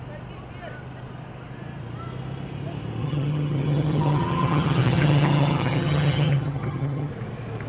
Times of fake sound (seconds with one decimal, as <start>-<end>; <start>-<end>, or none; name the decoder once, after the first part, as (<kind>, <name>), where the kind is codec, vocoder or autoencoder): 3.0-7.1 (vocoder, HiFi-GAN)